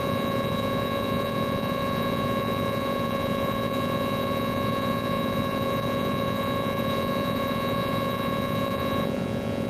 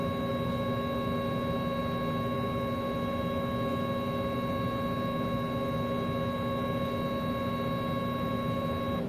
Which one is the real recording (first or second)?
second